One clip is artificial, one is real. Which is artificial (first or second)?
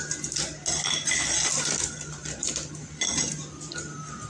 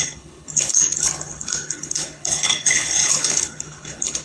second